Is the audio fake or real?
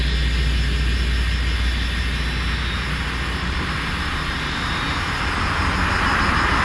real